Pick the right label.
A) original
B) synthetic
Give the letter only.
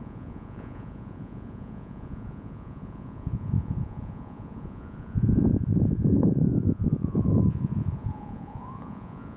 B